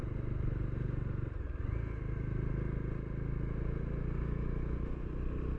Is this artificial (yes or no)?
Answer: no